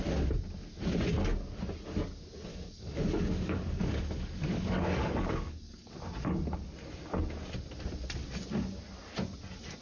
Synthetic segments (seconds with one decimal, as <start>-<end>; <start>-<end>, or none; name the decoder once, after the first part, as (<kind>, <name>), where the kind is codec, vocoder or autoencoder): 2.5-5.9 (codec, DAC)